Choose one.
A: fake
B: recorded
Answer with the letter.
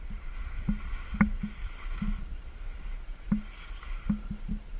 B